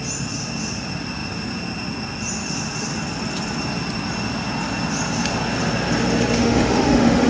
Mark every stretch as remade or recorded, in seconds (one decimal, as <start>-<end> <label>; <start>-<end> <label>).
0.0-6.4 recorded; 6.4-7.3 remade